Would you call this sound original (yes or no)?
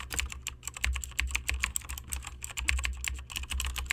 yes